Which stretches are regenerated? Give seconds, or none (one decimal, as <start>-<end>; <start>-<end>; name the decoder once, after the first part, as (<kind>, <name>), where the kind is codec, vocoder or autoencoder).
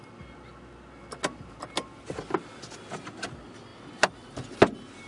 none